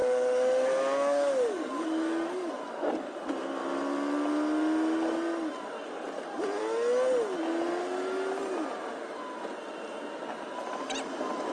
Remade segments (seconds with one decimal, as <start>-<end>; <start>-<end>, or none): 0.0-2.5